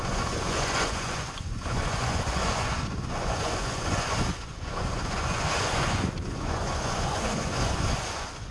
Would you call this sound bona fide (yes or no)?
no